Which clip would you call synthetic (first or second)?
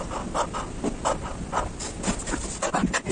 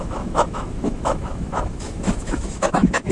second